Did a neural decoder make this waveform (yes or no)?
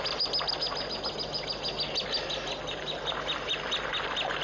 no